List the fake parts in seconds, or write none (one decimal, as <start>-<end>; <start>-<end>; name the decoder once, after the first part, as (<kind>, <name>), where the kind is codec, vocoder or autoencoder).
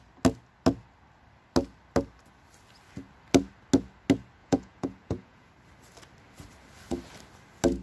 4.4-5.5 (vocoder, Vocos)